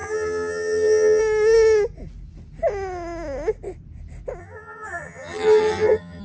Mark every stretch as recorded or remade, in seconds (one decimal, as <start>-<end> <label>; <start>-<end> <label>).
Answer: 0.0-1.2 remade; 1.2-4.4 recorded; 4.4-6.2 remade